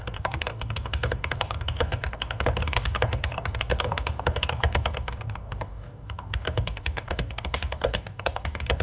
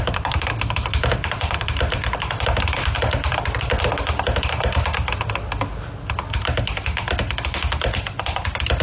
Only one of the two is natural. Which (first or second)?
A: second